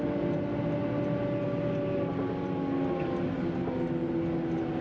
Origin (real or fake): real